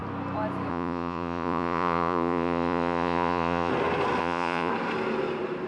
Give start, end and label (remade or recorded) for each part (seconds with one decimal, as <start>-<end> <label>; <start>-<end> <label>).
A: 0.0-0.7 recorded; 0.7-3.7 remade; 3.7-4.2 recorded; 4.2-4.7 remade; 4.7-5.7 recorded